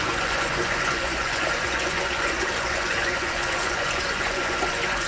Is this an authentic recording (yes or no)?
no